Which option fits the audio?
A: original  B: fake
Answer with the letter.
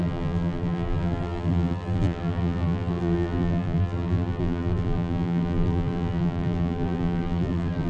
B